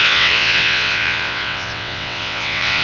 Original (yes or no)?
no